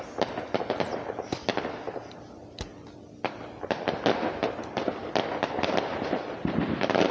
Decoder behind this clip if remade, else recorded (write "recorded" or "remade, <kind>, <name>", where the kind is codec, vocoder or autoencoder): recorded